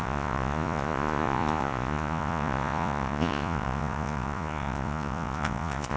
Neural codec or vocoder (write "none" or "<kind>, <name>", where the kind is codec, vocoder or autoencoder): vocoder, Vocos